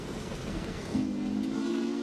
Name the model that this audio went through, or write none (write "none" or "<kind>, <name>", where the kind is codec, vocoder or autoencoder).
codec, SNAC